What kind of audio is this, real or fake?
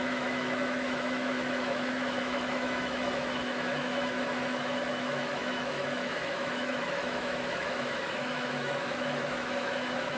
fake